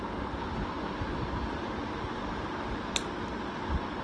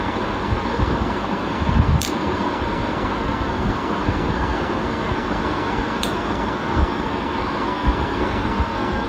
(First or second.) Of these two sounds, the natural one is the first